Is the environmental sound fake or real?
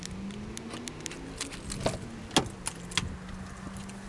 real